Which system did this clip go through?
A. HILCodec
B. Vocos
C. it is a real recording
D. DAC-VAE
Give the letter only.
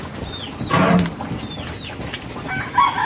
C